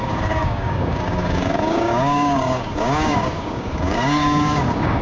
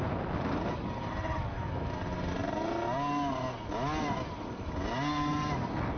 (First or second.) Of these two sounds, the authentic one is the second